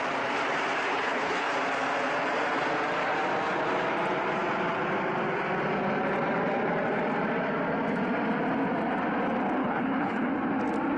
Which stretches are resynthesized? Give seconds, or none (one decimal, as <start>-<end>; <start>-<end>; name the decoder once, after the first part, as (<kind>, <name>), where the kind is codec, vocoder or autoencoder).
0.9-1.5 (codec, HILCodec); 9.6-10.3